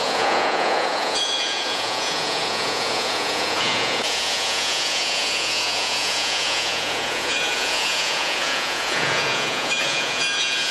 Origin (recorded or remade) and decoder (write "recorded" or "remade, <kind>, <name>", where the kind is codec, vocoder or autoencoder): remade, vocoder, Vocos